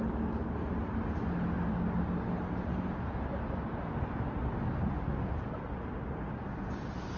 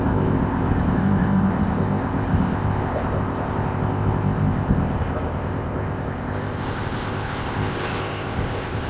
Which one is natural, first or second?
first